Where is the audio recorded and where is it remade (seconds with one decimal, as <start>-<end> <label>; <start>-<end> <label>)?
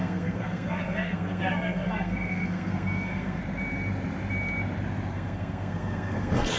0.0-3.4 remade; 3.4-5.1 recorded; 5.1-6.6 remade